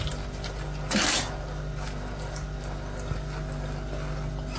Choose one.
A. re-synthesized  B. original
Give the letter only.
B